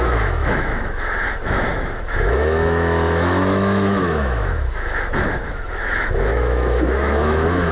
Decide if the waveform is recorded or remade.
remade